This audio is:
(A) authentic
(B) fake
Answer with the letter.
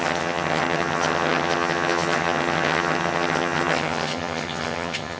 B